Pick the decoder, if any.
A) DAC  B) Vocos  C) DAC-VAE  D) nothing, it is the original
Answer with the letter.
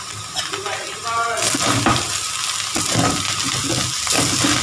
D